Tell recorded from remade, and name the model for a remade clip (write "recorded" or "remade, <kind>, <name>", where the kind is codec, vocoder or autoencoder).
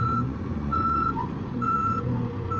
remade, vocoder, Vocos